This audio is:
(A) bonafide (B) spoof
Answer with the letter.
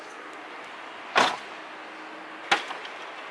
A